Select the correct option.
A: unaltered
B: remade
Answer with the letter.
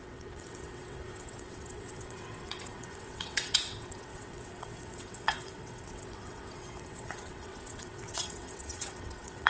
B